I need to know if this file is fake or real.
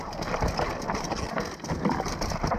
real